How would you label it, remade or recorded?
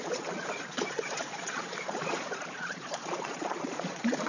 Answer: remade